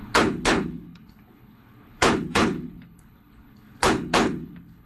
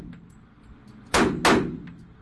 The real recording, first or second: second